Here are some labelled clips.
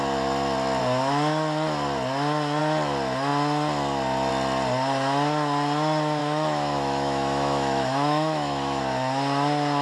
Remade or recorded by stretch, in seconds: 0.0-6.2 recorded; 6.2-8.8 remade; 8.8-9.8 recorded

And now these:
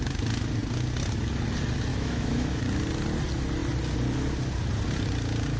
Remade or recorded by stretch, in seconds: 0.0-1.9 recorded; 1.9-2.6 remade; 2.6-5.6 recorded

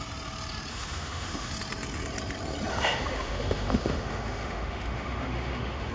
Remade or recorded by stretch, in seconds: 0.0-0.7 recorded; 0.7-1.5 remade; 1.5-2.7 recorded; 2.7-5.9 remade

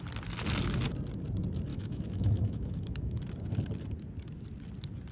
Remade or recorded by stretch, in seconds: 0.0-1.7 recorded; 1.7-3.2 remade; 3.2-5.1 recorded